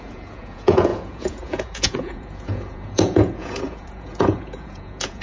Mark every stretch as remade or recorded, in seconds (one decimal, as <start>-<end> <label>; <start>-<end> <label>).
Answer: 0.0-5.2 remade